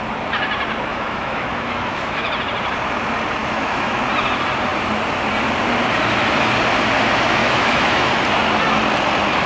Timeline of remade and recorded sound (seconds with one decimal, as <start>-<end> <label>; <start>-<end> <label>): 0.0-0.9 recorded; 0.9-2.3 remade; 2.3-3.4 recorded; 3.4-4.0 remade; 4.0-7.4 recorded; 7.4-8.1 remade; 8.1-9.5 recorded